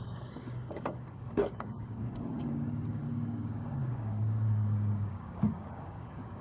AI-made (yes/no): yes